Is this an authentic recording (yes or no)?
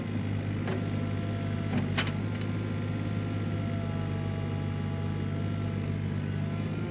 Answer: yes